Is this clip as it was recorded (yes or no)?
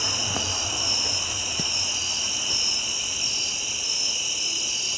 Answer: yes